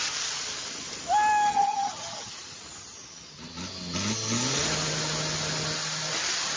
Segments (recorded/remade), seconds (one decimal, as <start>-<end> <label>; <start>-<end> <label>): 0.0-1.5 recorded; 1.5-2.3 remade; 2.3-6.6 recorded